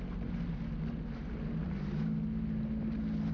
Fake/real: real